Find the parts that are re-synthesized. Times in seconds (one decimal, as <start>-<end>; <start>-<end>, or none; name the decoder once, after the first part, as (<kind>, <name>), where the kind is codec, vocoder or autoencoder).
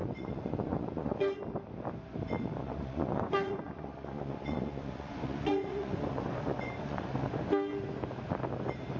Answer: 0.0-1.4 (vocoder, Vocos); 2.6-7.4